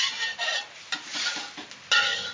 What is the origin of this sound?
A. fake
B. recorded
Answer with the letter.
B